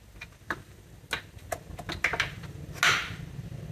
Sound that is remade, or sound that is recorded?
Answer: recorded